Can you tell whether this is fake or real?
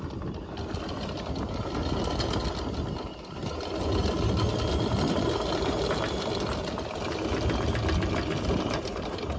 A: real